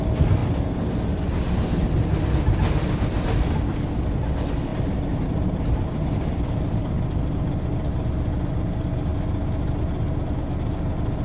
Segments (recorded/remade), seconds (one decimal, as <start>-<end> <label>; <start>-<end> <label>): 0.0-4.7 recorded; 4.7-6.4 remade; 6.4-11.2 recorded